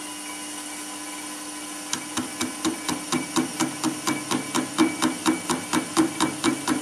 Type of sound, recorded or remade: recorded